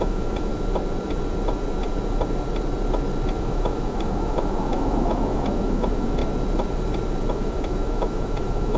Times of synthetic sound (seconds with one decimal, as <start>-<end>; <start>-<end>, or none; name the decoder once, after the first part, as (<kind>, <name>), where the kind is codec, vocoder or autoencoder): 0.0-0.5 (autoencoder, DAC-VAE); 3.4-6.2; 7.3-8.8